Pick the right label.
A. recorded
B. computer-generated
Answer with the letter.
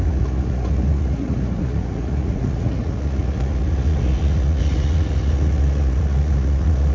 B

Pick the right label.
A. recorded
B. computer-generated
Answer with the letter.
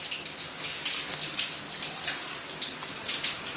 A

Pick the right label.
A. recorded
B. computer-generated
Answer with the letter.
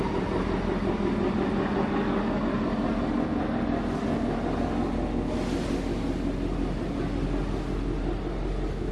A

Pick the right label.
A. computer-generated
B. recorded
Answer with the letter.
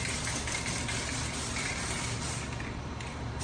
B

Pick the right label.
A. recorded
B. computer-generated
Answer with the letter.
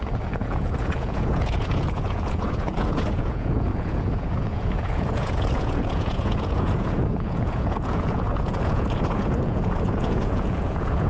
B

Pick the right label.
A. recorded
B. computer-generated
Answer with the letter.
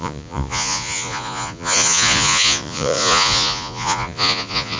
B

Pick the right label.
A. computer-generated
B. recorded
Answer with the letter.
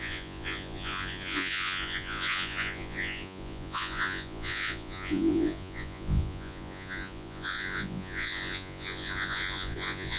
A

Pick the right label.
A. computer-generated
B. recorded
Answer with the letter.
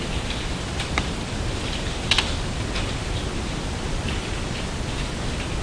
B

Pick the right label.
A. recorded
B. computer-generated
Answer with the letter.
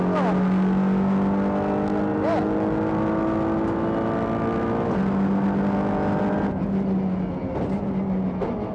A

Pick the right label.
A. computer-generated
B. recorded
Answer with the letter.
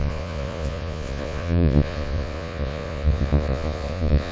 A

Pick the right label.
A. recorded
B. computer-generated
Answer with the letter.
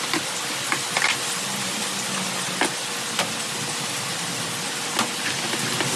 A